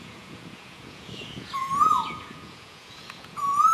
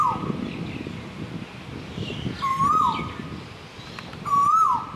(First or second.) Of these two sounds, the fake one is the first